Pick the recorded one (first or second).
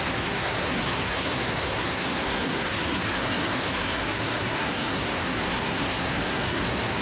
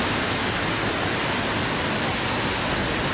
second